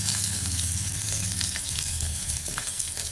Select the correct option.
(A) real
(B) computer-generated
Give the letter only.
B